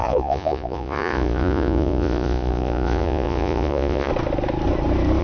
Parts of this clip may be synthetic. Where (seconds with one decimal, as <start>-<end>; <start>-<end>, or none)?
0.0-4.1